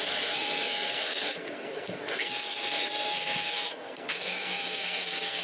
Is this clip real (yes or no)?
no